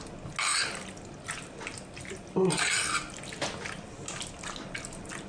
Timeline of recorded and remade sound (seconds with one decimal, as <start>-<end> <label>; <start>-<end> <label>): 0.0-5.3 recorded

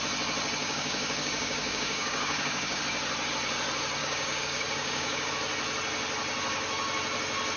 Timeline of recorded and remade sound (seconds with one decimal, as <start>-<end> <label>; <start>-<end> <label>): 0.0-0.6 recorded; 0.6-2.8 remade; 2.8-4.0 recorded; 4.0-5.3 remade; 5.3-7.6 recorded

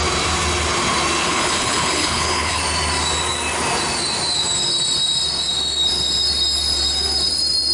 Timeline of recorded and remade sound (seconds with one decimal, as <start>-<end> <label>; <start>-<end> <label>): 0.0-1.2 recorded; 1.2-2.6 remade; 2.6-7.7 recorded

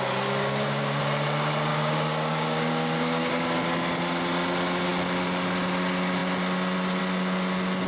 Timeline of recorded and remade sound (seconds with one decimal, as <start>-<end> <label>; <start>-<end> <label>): 0.0-0.4 recorded; 0.4-1.0 remade; 1.0-1.7 recorded; 1.7-3.3 remade; 3.3-7.9 recorded

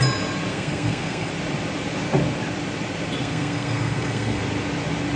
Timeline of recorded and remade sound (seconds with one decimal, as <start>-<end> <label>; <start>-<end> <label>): 0.0-0.5 recorded; 0.5-1.3 remade; 1.3-3.2 recorded; 3.2-4.4 remade; 4.4-5.2 recorded

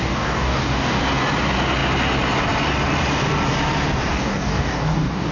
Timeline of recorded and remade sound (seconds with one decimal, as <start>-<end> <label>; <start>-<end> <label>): 0.0-1.0 remade; 1.0-4.1 recorded; 4.1-5.3 remade

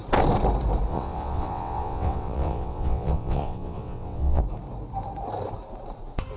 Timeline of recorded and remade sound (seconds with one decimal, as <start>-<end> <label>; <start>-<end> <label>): 0.0-0.9 recorded; 0.9-4.4 remade; 4.4-6.4 recorded

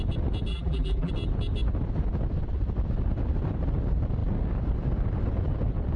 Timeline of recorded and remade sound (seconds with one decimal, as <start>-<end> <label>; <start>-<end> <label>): 0.0-0.5 recorded; 0.5-1.1 remade; 1.1-6.0 recorded